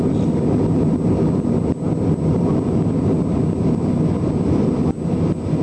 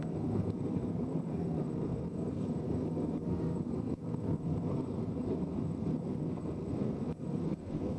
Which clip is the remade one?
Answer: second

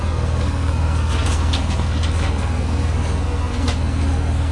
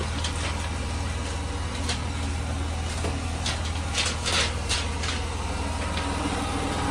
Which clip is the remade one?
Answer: first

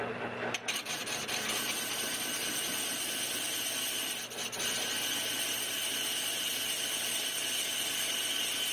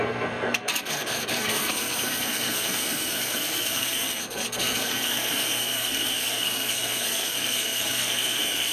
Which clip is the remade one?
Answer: second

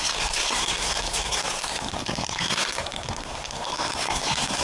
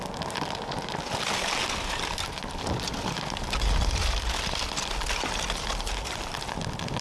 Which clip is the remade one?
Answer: first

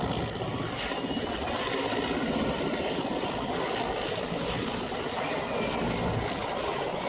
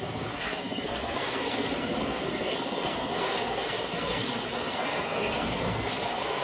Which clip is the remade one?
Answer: second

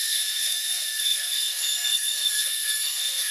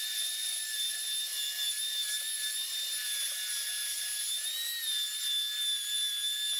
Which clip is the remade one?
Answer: first